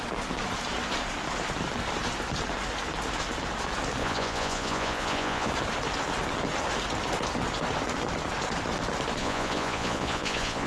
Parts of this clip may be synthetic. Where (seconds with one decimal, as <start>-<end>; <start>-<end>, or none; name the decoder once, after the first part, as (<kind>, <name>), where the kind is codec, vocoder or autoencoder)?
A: 4.0-5.5 (vocoder, Vocos); 9.2-10.7